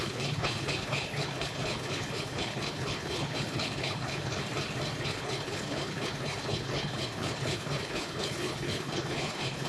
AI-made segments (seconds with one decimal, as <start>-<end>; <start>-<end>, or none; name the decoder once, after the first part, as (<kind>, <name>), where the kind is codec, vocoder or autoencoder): 0.0-4.4 (codec, HILCodec); 5.0-9.7

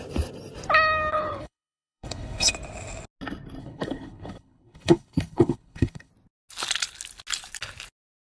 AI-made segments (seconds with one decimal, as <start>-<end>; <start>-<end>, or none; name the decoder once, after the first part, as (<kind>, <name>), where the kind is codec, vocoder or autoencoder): 1.1-2.5 (codec, HILCodec); 3.6-6.1

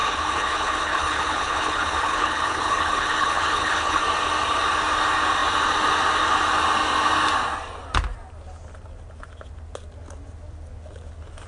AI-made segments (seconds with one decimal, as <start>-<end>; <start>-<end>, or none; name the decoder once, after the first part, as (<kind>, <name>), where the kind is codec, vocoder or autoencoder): 0.0-4.0 (codec, HILCodec)

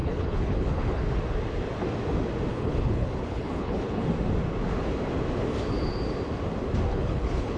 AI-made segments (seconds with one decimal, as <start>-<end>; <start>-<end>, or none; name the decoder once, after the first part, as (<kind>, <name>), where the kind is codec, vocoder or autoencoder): 0.0-1.0 (codec, HILCodec); 2.5-4.1; 6.9-7.6

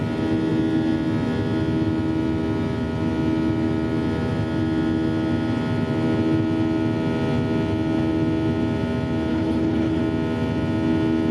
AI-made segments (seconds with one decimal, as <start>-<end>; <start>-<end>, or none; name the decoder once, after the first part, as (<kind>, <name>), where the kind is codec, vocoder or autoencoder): 9.3-10.0 (codec, HILCodec)

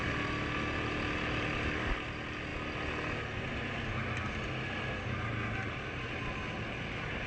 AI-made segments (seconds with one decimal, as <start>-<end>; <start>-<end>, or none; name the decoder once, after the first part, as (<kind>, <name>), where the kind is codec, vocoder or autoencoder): none

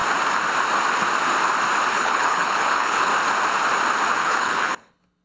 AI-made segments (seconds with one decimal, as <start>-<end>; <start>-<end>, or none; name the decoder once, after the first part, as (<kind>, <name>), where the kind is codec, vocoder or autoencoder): 1.9-3.1 (codec, HILCodec); 4.2-5.2